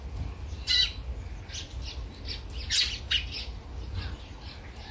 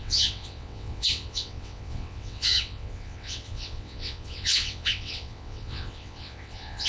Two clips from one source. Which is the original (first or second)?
first